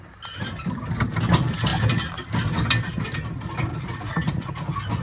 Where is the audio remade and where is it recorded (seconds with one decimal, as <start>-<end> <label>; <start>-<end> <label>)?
0.0-3.7 recorded; 3.7-4.5 remade; 4.5-5.0 recorded